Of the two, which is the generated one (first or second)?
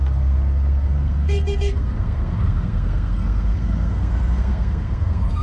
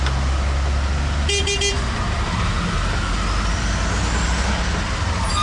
first